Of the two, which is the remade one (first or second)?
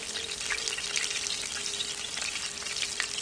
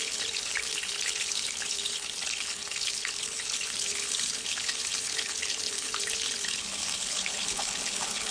second